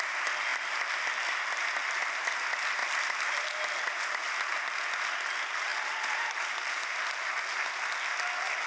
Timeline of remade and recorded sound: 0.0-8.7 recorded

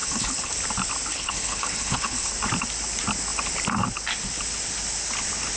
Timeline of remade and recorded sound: 0.0-0.5 remade; 0.5-1.1 recorded; 1.1-2.3 remade; 2.3-5.6 recorded

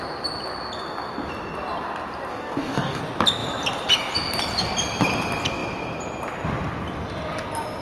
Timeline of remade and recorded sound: 0.0-2.3 recorded; 2.3-3.0 remade; 3.0-7.8 recorded

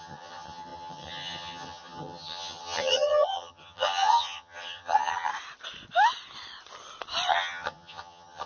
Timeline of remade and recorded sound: 0.0-5.3 remade; 5.3-7.3 recorded; 7.3-8.5 remade

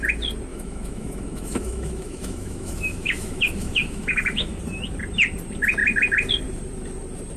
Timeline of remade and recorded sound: 0.0-0.5 recorded; 0.5-4.6 remade; 4.6-7.4 recorded

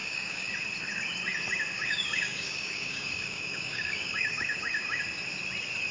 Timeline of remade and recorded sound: 0.0-0.5 remade; 0.5-1.7 recorded; 1.7-5.0 remade; 5.0-5.9 recorded